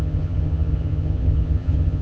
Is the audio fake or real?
fake